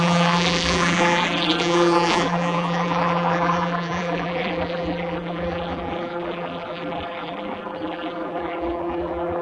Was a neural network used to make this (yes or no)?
yes